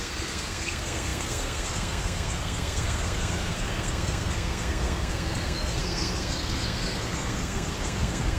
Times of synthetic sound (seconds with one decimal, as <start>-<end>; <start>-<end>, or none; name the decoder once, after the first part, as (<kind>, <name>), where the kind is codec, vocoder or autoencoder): 0.0-8.4 (codec, SNAC)